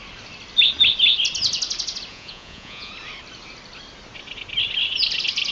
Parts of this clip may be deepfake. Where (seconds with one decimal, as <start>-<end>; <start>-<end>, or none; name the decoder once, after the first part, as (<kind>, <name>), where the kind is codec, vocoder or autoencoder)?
2.1-2.9 (vocoder, Vocos)